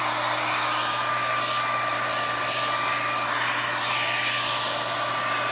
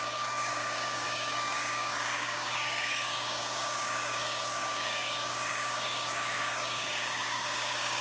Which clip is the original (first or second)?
first